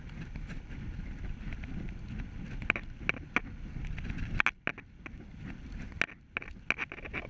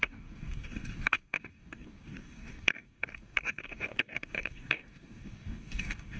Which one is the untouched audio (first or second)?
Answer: first